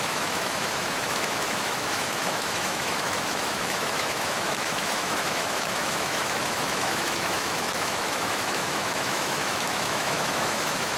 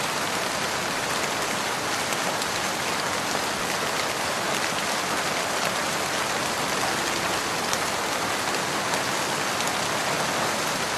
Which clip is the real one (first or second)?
second